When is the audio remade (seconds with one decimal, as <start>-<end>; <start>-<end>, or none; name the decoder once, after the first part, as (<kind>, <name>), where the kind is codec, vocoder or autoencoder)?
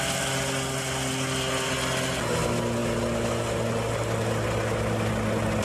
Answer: none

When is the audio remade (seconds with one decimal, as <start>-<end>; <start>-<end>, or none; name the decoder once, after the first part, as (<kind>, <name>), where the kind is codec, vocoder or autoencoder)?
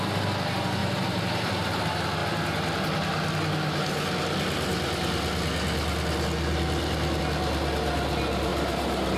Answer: 0.8-1.8 (vocoder, BigVGAN v2); 8.5-9.2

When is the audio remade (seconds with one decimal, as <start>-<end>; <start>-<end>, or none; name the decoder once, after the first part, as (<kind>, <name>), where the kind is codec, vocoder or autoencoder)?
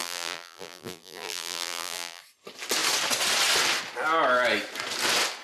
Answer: 0.0-2.2 (vocoder, BigVGAN v2)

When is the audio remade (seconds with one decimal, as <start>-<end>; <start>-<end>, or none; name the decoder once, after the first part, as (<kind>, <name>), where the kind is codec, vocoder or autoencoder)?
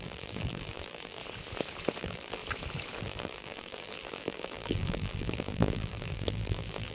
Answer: 0.0-1.2 (vocoder, BigVGAN v2); 2.0-2.4; 3.0-6.9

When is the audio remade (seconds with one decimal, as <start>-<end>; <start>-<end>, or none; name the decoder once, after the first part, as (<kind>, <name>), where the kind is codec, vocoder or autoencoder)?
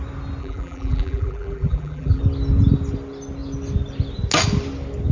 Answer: 0.4-2.2 (vocoder, BigVGAN v2)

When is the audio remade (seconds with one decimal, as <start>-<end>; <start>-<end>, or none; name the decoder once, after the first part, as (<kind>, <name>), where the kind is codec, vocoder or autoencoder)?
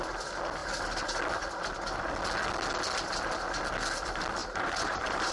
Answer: 4.4-5.3 (vocoder, BigVGAN v2)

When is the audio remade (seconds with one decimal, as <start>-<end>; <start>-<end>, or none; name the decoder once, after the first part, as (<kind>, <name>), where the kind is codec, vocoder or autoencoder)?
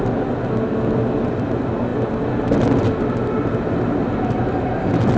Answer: none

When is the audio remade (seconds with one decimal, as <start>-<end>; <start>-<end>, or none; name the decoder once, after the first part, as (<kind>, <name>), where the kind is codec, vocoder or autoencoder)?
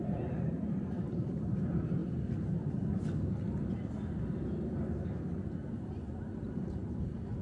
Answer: 0.0-2.0 (vocoder, BigVGAN v2); 5.7-7.4